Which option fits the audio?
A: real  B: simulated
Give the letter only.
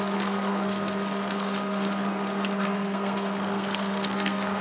B